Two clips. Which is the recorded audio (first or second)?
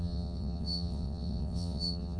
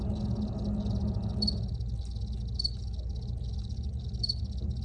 second